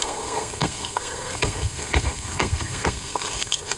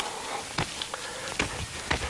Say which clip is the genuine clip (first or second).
second